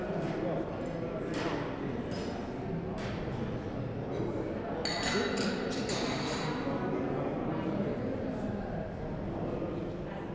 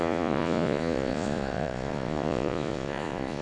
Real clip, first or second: first